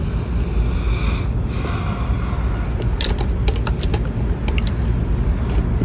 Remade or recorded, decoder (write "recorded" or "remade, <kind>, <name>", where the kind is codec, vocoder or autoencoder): recorded